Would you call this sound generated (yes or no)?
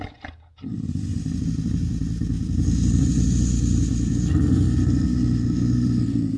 no